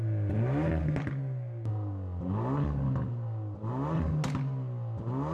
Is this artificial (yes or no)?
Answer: no